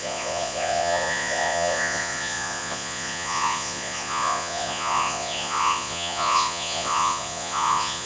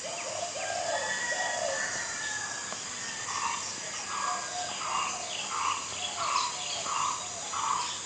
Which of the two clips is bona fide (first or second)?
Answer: second